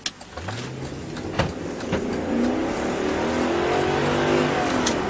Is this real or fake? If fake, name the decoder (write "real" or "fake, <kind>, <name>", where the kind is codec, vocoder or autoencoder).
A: real